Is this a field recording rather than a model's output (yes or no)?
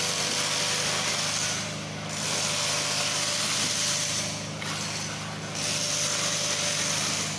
yes